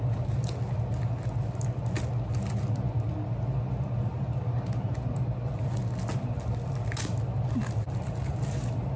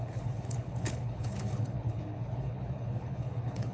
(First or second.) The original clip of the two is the first